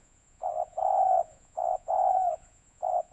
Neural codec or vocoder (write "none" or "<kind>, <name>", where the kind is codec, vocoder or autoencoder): vocoder, Vocos